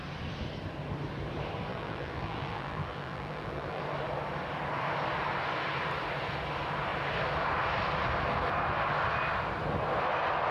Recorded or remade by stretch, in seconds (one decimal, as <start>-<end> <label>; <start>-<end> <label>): 0.0-1.7 recorded; 1.7-3.8 remade; 3.8-10.5 recorded